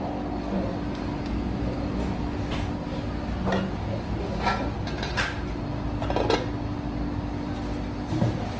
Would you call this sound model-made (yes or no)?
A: no